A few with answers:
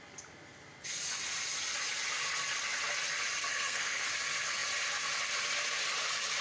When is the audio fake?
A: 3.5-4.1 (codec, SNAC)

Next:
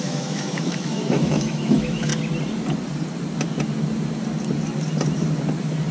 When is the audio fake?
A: 0.0-2.1 (autoencoder, DAC-VAE)

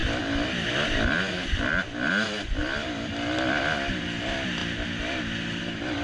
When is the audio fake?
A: none

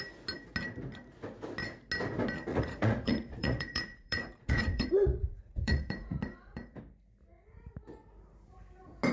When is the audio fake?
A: 2.5-6.8 (vocoder, Vocos)

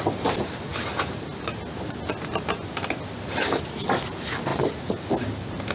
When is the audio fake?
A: none